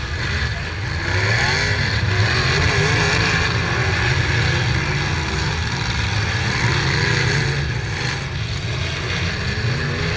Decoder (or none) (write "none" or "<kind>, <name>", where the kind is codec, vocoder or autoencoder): none